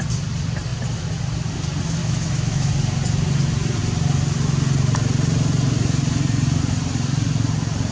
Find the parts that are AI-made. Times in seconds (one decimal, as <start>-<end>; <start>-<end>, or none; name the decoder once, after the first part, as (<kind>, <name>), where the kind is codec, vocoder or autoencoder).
2.0-2.7 (autoencoder, DAC-VAE)